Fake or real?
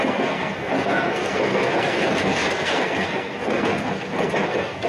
fake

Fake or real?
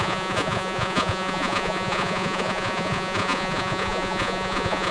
fake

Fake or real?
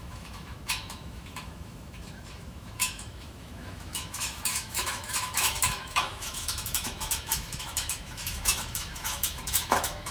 fake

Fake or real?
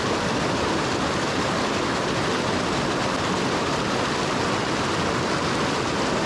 real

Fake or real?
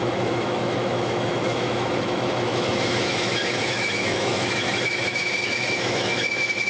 fake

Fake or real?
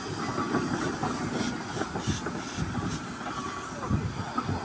real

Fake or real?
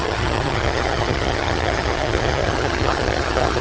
fake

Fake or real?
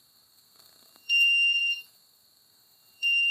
fake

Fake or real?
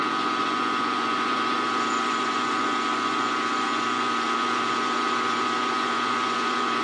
fake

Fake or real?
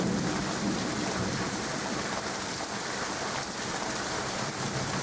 fake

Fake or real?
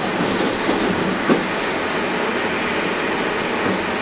real